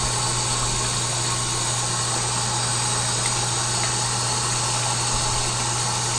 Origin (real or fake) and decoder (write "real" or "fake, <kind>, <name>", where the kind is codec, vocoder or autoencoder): real